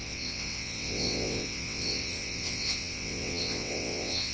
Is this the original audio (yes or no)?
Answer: no